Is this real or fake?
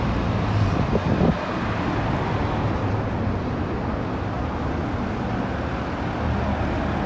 real